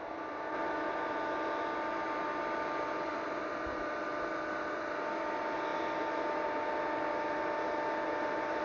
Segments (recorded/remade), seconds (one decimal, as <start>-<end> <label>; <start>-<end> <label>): 0.0-8.6 recorded